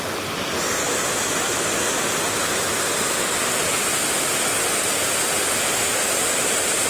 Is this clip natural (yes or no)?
yes